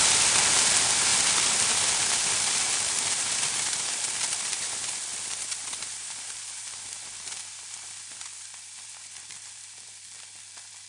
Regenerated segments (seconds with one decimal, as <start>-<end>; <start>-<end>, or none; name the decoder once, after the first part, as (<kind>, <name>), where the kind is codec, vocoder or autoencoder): 1.1-2.6 (vocoder, BigVGAN v2); 5.1-7.3; 8.3-9.9